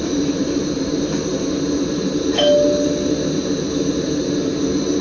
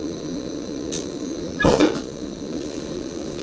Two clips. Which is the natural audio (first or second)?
first